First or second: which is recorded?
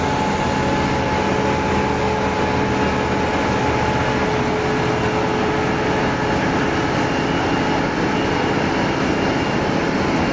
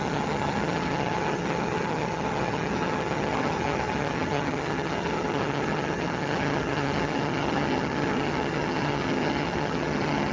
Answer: first